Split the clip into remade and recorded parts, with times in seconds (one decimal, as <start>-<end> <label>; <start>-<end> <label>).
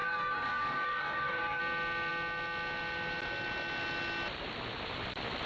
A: 0.0-1.6 remade; 1.6-5.5 recorded